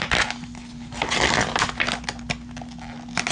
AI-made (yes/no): no